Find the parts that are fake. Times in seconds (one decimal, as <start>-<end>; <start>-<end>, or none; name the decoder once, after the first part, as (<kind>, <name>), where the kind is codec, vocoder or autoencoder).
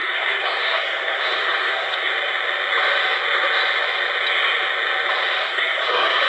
0.0-2.1 (codec, SNAC); 5.4-6.3